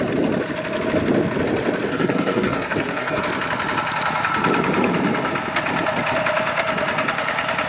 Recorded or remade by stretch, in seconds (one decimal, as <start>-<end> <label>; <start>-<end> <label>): 0.0-1.9 recorded; 1.9-3.2 remade; 3.2-7.7 recorded